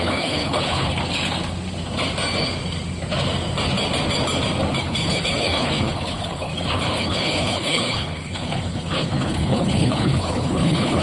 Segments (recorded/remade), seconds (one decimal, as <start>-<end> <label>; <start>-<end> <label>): 0.0-1.0 remade; 1.0-4.8 recorded; 4.8-6.5 remade; 6.5-7.0 recorded; 7.0-11.0 remade